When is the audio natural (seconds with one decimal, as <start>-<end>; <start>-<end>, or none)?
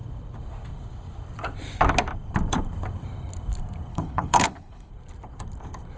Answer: 0.0-3.9; 4.9-6.0